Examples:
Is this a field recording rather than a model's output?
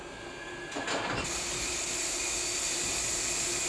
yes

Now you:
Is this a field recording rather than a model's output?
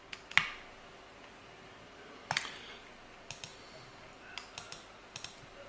yes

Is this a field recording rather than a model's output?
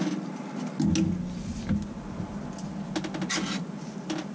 yes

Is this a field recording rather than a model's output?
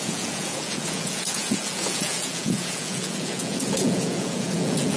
no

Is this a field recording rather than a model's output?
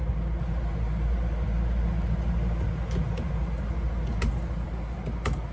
yes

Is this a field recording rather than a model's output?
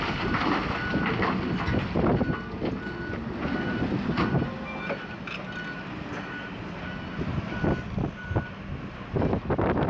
yes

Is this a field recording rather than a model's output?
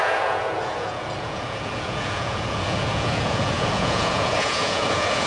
no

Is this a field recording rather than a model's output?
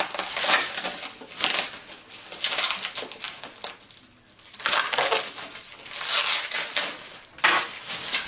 yes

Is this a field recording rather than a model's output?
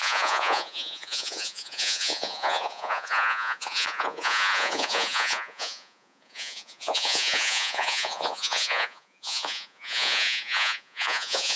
no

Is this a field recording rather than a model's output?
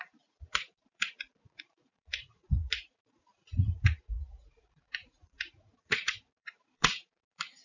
no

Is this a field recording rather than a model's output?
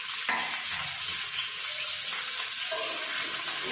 yes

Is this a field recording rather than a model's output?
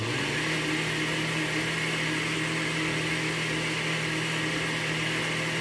yes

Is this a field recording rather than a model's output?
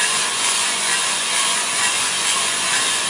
no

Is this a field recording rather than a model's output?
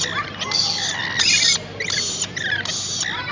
yes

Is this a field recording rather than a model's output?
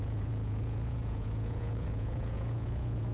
no